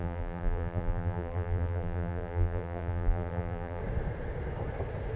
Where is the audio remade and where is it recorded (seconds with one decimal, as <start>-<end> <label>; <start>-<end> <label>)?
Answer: 0.0-3.8 remade; 3.8-5.2 recorded